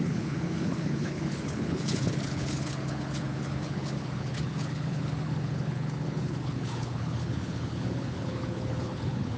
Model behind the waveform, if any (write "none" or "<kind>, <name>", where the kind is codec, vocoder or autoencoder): codec, HILCodec